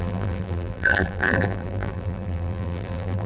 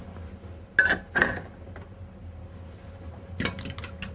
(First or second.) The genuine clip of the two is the second